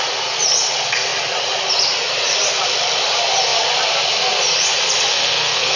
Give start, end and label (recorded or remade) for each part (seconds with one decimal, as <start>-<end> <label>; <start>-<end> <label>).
0.0-5.1 recorded; 5.1-5.8 remade

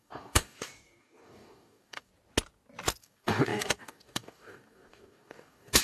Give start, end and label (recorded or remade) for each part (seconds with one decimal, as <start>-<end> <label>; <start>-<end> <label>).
0.0-2.1 remade; 2.1-3.0 recorded; 3.0-5.8 remade

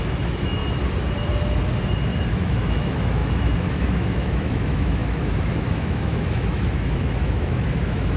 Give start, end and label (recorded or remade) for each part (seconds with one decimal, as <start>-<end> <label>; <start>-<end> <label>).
0.0-0.6 remade; 0.6-2.3 recorded; 2.3-8.2 remade

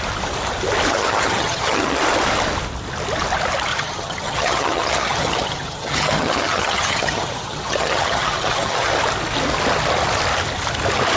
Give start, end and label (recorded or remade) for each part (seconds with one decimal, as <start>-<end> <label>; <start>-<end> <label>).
0.0-0.9 recorded; 0.9-2.0 remade; 2.0-3.7 recorded; 3.7-8.9 remade; 8.9-11.2 recorded